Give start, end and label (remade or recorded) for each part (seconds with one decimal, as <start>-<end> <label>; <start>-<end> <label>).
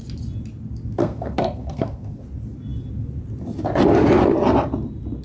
0.0-1.0 recorded; 1.0-2.2 remade; 2.2-5.2 recorded